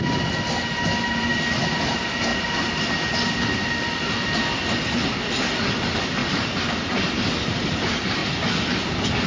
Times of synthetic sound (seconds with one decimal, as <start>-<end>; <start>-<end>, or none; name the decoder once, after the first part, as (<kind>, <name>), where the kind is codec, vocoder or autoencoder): 1.3-1.8 (vocoder, BigVGAN v2); 6.2-7.6